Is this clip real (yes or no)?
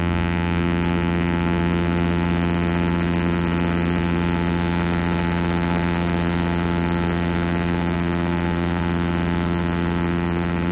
no